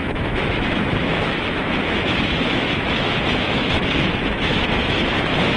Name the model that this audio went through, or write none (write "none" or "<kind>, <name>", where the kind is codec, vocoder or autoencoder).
autoencoder, DAC-VAE